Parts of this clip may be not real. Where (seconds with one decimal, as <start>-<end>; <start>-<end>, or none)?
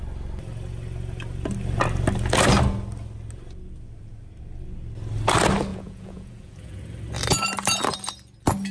5.7-6.8